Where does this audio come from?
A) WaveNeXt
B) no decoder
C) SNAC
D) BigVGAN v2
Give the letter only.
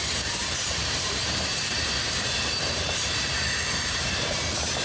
D